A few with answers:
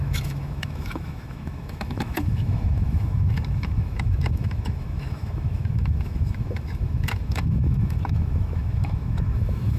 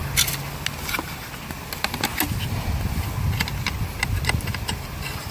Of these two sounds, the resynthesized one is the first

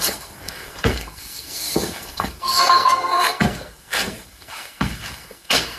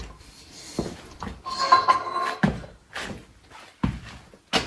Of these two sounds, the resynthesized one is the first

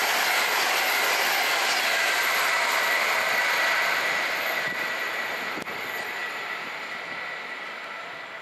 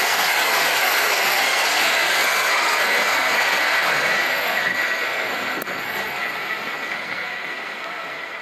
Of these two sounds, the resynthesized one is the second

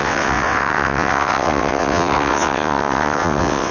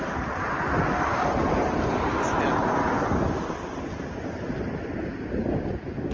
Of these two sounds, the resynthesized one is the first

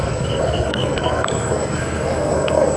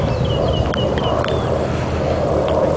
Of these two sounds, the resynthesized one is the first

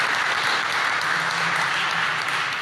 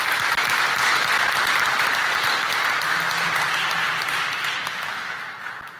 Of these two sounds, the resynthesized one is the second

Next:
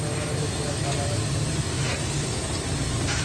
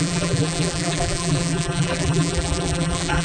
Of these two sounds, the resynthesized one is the second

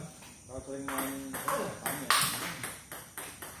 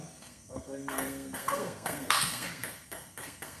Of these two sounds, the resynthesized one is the second